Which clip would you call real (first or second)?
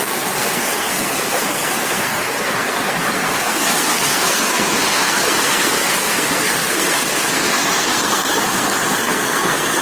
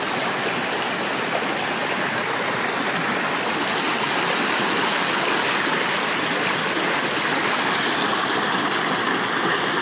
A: second